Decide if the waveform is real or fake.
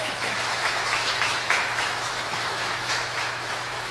fake